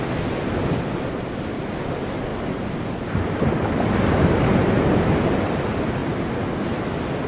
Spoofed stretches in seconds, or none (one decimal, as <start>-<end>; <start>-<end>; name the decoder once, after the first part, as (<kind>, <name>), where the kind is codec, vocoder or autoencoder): none